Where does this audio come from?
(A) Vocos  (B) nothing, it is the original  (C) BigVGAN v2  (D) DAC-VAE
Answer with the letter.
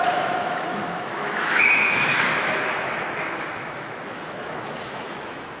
D